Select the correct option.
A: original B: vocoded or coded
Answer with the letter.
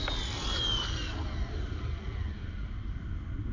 A